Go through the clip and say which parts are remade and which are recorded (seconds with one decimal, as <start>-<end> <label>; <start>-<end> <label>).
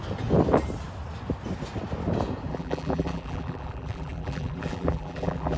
0.0-2.5 recorded; 2.5-5.6 remade